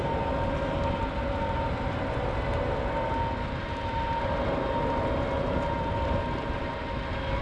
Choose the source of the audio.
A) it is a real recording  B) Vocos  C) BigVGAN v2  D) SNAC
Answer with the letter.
A